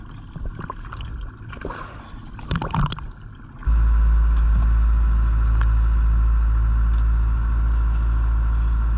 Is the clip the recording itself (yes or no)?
yes